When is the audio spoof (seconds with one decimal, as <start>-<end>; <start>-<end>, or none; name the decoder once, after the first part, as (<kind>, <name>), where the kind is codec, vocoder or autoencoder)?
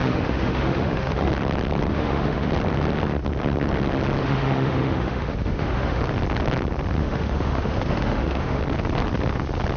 0.0-1.3 (autoencoder, DAC-VAE); 1.9-2.5; 4.2-6.0; 7.0-8.6